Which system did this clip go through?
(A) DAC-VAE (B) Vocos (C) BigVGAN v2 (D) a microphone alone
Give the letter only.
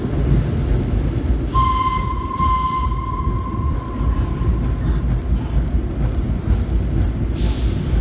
D